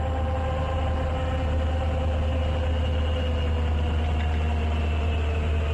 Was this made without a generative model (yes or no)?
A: yes